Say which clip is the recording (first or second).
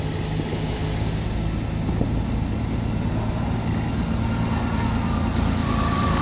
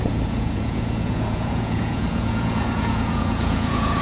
first